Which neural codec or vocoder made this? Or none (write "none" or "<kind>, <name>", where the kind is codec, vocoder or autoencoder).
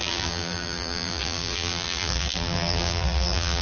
vocoder, BigVGAN v2